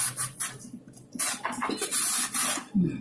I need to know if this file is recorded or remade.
recorded